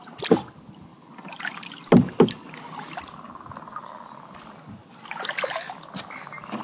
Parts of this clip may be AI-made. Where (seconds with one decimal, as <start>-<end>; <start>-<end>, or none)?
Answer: none